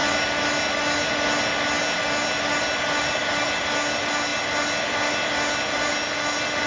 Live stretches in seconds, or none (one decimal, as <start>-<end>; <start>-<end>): 0.0-6.7